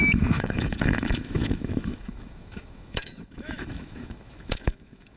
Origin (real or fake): fake